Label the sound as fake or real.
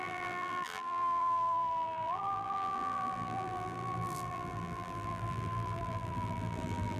fake